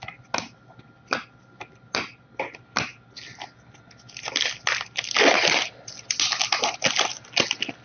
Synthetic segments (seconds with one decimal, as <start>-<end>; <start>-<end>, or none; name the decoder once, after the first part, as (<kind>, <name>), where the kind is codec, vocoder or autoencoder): none